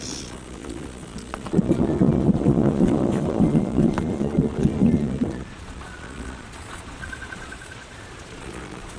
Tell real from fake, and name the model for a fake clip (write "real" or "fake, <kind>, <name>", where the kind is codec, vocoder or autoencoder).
fake, vocoder, Vocos